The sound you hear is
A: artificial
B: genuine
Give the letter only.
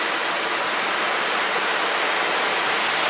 B